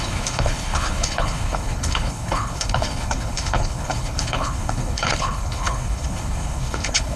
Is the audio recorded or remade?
remade